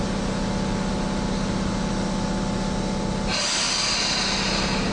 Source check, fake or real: real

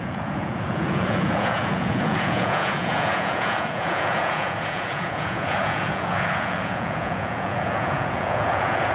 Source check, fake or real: fake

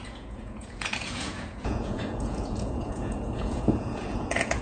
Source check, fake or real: fake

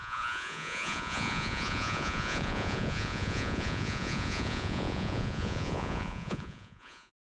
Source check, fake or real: fake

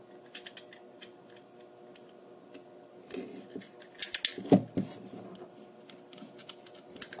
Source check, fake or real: real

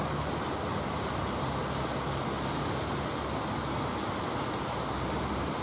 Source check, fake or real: real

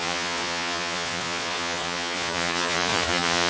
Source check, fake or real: fake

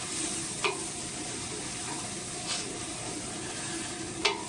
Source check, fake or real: real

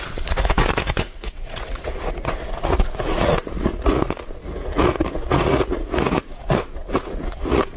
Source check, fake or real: fake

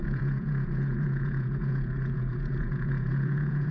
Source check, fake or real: fake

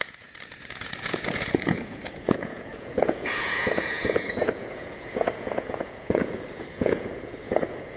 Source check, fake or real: fake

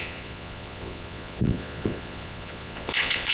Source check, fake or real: fake